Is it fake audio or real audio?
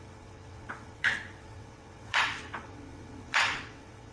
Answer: fake